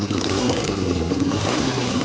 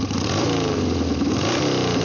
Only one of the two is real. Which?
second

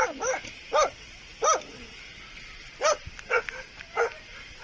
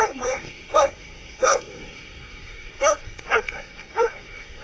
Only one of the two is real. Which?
first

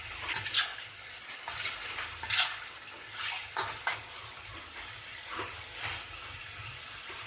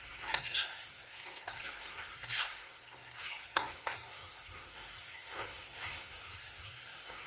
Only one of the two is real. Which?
first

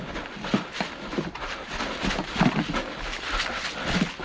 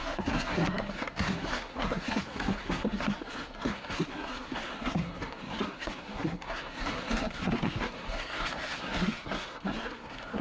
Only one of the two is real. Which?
first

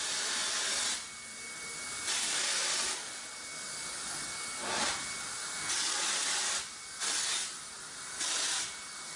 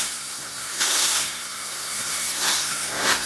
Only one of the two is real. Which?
first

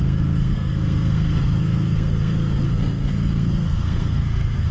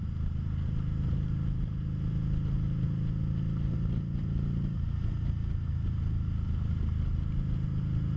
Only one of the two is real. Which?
second